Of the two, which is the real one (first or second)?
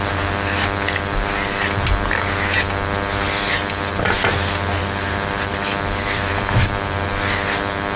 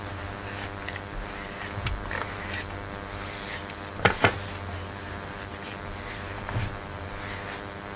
first